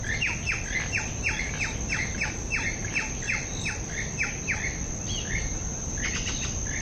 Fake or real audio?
real